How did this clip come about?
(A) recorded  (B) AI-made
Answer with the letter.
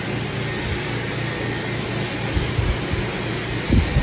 A